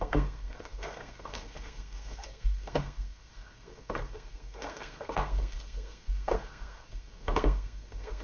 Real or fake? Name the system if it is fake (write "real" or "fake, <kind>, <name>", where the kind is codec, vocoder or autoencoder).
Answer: fake, codec, SNAC